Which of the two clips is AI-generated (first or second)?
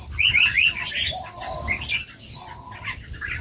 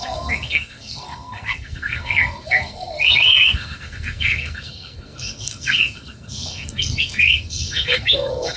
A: second